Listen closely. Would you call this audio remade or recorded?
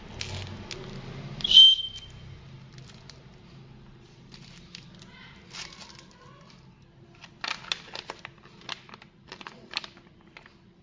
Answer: recorded